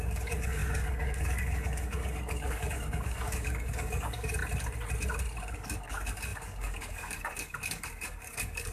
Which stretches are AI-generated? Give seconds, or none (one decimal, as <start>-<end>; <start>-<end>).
0.0-4.4; 5.4-8.7